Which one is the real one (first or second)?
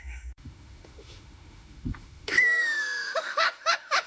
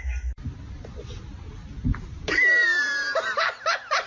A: second